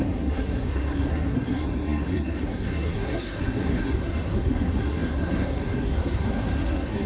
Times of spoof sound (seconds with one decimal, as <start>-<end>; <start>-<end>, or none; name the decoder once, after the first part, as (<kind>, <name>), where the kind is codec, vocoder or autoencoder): 0.0-7.1 (codec, SNAC)

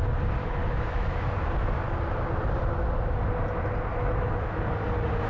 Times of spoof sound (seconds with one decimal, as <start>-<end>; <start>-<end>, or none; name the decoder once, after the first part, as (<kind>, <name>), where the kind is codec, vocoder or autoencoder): 0.4-1.3 (autoencoder, DAC-VAE); 3.9-4.6

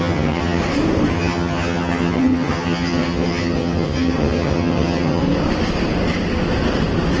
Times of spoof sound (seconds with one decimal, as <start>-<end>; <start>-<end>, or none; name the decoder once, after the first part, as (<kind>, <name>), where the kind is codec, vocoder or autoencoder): 0.0-0.6 (vocoder, HiFi-GAN); 1.1-5.2

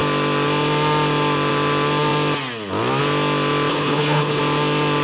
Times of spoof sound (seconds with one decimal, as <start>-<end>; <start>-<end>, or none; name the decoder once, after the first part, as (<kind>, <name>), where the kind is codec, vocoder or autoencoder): 3.7-4.4 (codec, HILCodec)

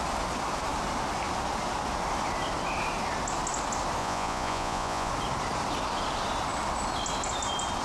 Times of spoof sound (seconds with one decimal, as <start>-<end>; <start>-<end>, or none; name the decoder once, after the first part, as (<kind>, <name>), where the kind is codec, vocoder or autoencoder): 4.0-5.1 (vocoder, Vocos)

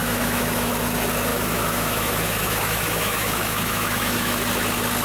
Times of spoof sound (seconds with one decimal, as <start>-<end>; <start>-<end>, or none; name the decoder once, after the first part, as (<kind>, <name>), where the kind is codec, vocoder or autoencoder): 0.0-0.7 (autoencoder, DAC-VAE); 1.3-4.3

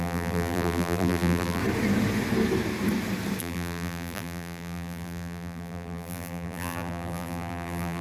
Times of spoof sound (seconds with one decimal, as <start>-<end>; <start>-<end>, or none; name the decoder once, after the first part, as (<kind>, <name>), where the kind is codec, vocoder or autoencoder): 0.0-1.6 (vocoder, BigVGAN v2); 3.4-8.0

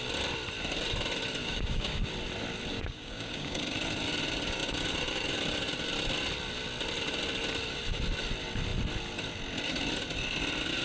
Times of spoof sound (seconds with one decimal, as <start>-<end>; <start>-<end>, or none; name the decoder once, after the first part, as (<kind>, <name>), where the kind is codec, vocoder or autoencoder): 1.4-2.1 (codec, DAC); 2.7-3.6